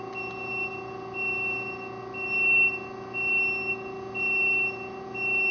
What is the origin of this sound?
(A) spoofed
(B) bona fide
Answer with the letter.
B